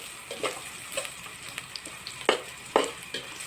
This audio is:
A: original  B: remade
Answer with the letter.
A